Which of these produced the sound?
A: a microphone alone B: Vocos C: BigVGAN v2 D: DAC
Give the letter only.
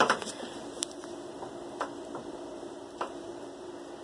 C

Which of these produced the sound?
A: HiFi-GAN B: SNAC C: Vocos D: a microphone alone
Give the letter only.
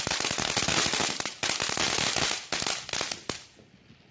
D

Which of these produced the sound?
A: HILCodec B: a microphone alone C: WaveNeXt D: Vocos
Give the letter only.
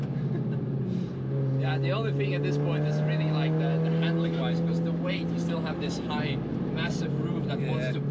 B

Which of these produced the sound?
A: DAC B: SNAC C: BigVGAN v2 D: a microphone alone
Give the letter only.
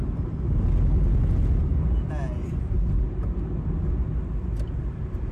D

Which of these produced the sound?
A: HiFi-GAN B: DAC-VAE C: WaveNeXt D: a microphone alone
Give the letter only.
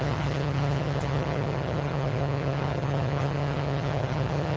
A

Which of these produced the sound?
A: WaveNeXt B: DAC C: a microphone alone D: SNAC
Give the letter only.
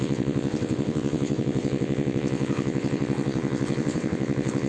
A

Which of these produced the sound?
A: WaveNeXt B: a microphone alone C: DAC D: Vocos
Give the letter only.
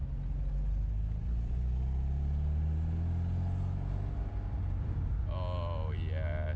B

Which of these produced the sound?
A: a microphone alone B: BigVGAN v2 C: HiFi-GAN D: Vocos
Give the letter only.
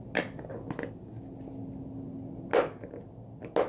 A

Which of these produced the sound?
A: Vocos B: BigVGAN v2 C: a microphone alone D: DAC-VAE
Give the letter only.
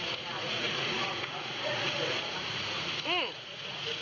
A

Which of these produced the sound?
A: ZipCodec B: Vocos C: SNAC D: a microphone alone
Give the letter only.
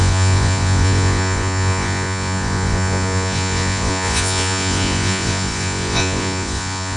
B